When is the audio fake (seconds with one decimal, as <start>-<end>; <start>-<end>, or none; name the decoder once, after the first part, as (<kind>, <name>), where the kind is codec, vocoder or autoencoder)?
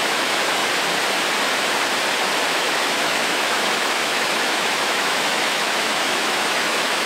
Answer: 0.0-0.6 (autoencoder, DAC-VAE); 2.6-7.1